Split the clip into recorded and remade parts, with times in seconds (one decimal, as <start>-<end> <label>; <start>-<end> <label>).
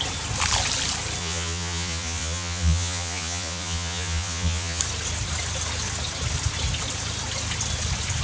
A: 0.0-1.2 recorded; 1.2-4.8 remade; 4.8-8.2 recorded